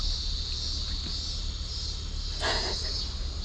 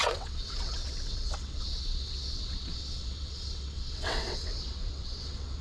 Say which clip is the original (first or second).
first